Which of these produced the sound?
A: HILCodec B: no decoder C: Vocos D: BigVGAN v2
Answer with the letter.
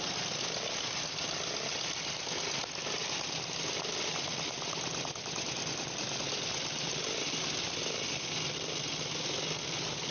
B